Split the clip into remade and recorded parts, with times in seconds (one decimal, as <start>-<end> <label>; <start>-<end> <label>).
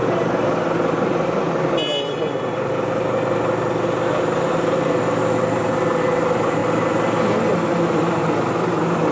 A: 0.0-9.1 recorded